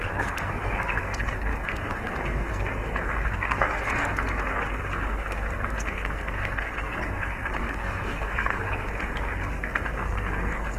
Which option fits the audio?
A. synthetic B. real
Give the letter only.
A